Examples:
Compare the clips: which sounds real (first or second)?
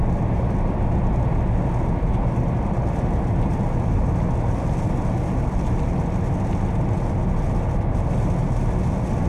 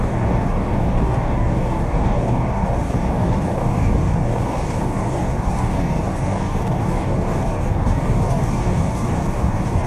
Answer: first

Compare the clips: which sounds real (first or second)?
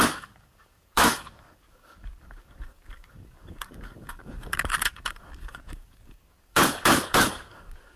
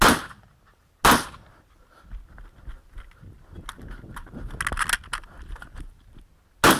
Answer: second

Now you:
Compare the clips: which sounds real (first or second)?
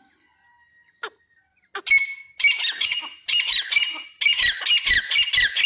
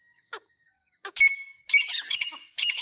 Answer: first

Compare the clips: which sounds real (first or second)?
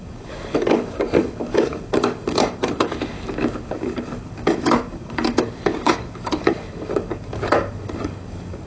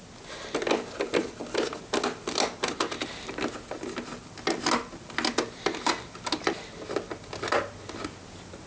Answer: second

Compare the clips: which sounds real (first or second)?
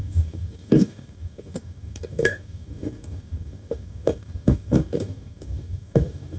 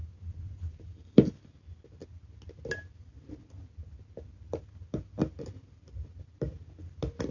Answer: second